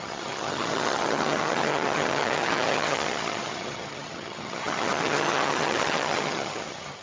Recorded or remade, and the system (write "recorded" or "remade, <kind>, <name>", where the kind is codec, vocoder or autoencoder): remade, vocoder, HiFi-GAN